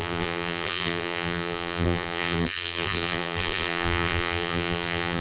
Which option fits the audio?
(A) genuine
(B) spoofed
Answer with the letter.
B